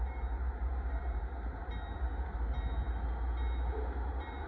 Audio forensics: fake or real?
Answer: real